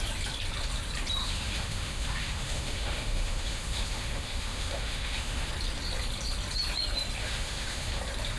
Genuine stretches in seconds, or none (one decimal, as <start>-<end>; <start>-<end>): 0.0-1.2; 5.5-7.2; 8.0-8.4